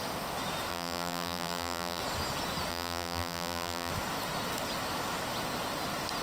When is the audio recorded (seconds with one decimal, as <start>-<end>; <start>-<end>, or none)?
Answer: 0.0-0.7; 2.0-2.7; 3.9-6.2